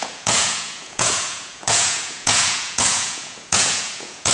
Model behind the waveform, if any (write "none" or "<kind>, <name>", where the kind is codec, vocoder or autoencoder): vocoder, Vocos